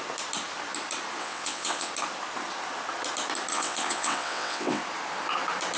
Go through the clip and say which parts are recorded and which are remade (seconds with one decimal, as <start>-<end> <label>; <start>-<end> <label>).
0.0-1.2 recorded; 1.2-1.9 remade; 1.9-3.5 recorded; 3.5-4.8 remade; 4.8-5.8 recorded